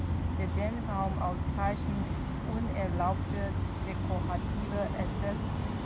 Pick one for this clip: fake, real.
real